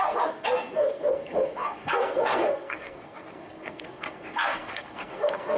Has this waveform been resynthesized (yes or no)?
yes